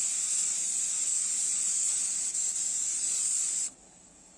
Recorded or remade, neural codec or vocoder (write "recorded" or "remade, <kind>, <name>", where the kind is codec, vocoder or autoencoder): recorded